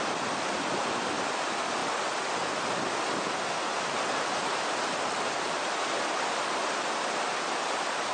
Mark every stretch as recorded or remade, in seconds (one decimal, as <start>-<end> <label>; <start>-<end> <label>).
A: 0.0-8.1 recorded